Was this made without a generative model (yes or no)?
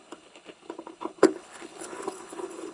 no